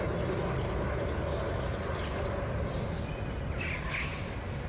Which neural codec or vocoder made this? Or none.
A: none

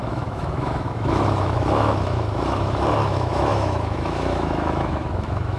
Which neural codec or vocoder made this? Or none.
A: autoencoder, DAC-VAE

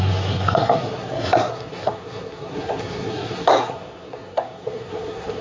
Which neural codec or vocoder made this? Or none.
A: codec, SNAC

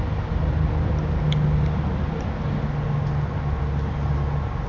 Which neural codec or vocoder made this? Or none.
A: none